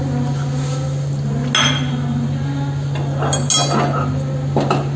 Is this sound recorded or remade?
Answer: recorded